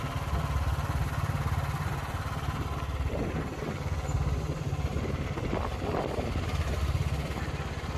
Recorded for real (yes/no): yes